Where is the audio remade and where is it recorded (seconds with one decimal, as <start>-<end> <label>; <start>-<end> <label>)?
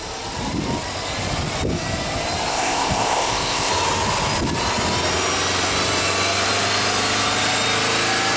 0.0-2.5 recorded; 2.5-3.7 remade; 3.7-8.4 recorded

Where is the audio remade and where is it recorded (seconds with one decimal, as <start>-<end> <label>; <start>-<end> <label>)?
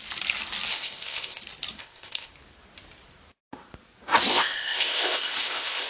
0.0-0.7 recorded; 0.7-1.4 remade; 1.4-1.8 recorded; 1.8-2.3 remade; 2.3-4.3 recorded; 4.3-5.9 remade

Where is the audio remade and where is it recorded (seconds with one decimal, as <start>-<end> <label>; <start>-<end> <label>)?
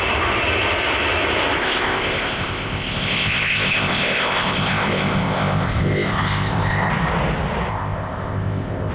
0.0-1.6 recorded; 1.6-6.9 remade; 6.9-7.7 recorded; 7.7-8.9 remade